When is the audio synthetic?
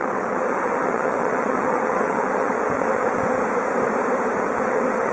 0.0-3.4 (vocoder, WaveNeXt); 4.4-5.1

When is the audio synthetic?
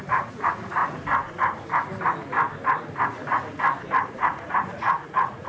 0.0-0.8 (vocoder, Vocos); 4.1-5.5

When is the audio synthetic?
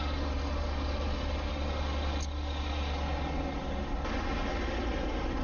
4.4-5.4 (vocoder, BigVGAN v2)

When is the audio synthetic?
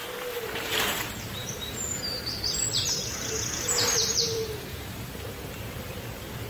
0.6-6.5 (vocoder, BigVGAN v2)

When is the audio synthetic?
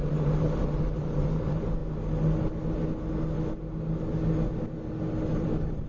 0.0-1.8 (vocoder, BigVGAN v2); 5.3-5.9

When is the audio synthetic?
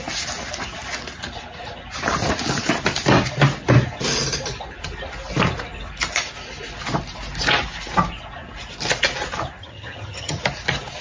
9.6-10.4 (vocoder, HiFi-GAN)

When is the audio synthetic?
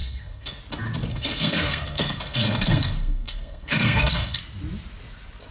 0.0-0.6 (codec, SNAC); 1.1-4.4